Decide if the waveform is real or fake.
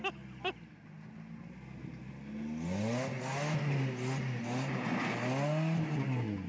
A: real